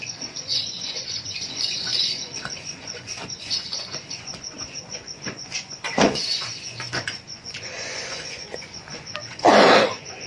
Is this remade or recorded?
remade